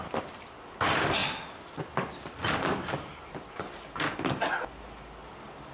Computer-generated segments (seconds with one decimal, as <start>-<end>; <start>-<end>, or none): none